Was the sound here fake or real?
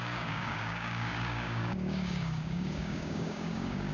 fake